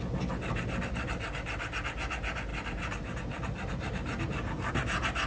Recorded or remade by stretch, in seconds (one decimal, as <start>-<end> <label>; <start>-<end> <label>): 0.0-2.5 recorded; 2.5-4.7 remade; 4.7-5.3 recorded